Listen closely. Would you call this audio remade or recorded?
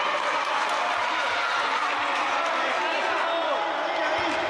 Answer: recorded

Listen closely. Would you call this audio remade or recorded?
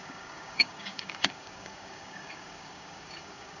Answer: remade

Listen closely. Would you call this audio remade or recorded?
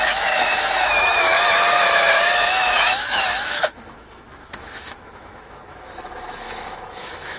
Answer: remade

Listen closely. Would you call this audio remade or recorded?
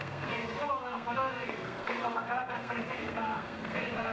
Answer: remade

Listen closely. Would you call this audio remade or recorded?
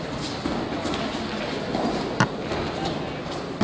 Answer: recorded